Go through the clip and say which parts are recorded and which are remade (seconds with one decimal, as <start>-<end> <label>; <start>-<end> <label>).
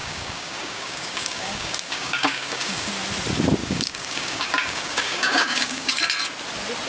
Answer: 0.0-2.9 remade; 2.9-3.6 recorded; 3.6-6.0 remade; 6.0-6.9 recorded